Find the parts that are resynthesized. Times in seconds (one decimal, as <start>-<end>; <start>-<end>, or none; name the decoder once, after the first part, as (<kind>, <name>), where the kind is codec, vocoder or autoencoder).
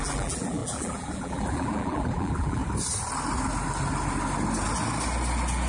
0.0-2.6 (vocoder, BigVGAN v2)